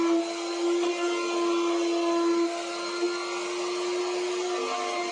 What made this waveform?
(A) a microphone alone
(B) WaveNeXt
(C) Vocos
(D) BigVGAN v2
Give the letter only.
A